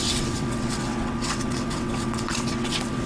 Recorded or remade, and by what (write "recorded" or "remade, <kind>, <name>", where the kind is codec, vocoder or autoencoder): remade, vocoder, WaveNeXt